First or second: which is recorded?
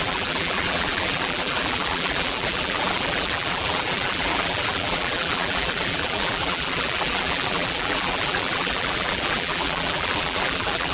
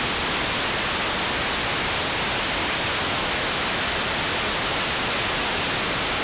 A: second